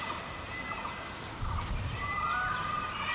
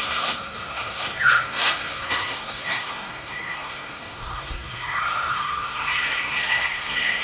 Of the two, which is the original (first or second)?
first